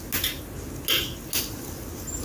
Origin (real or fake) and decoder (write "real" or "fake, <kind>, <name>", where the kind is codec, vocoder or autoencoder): real